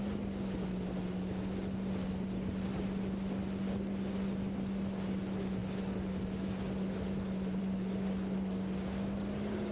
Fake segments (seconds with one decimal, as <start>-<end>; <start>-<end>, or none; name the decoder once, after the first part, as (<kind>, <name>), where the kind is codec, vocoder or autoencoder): none